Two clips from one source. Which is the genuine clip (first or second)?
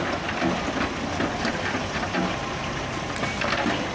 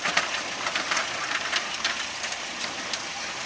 first